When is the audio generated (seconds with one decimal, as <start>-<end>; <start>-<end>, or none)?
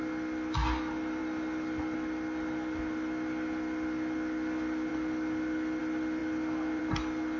none